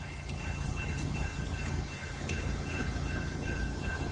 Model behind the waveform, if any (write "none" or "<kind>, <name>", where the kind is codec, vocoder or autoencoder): codec, HILCodec